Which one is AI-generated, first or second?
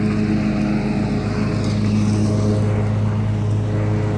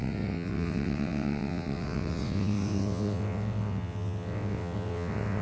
second